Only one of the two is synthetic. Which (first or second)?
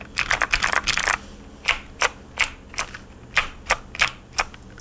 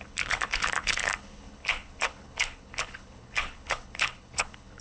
second